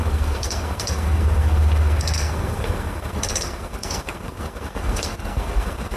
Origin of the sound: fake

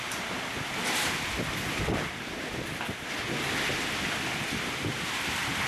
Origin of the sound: fake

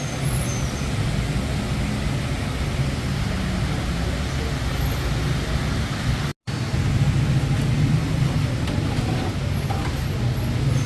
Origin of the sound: real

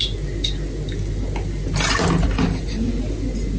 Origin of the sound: real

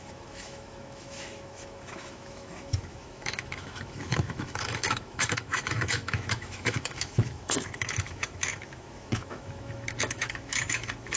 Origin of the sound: fake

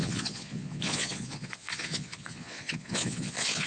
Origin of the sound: fake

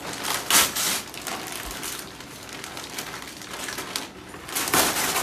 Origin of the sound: real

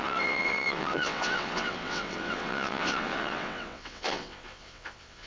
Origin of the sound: fake